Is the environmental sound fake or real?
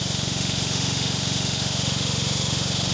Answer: fake